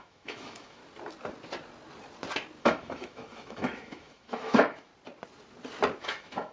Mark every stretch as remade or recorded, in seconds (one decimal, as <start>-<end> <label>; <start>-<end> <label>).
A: 0.0-0.8 remade; 0.8-2.6 recorded; 2.6-4.9 remade; 4.9-6.0 recorded; 6.0-6.5 remade